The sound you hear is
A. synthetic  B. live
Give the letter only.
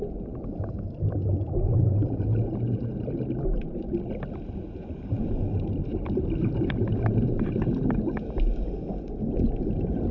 B